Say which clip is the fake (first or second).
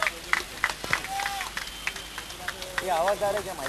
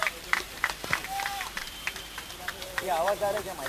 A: second